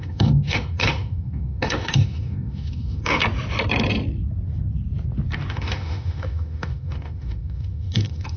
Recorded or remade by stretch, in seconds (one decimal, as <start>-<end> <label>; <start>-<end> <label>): 0.0-3.2 remade; 3.2-5.5 recorded; 5.5-8.4 remade